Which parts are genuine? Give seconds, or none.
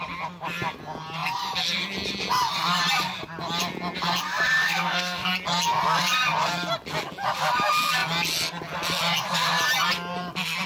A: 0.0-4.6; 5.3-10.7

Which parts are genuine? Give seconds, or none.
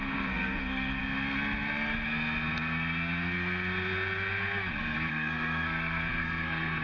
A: 1.0-5.1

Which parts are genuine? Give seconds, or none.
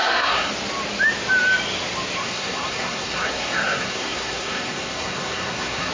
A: 0.5-2.2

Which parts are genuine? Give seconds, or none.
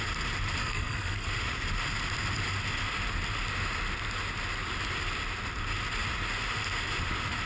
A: 0.0-0.6; 1.3-7.5